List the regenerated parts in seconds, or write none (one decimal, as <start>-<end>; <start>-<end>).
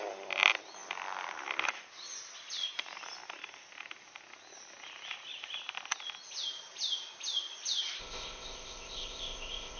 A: 8.0-9.8